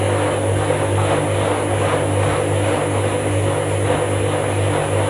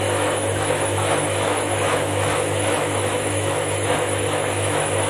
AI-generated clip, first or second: second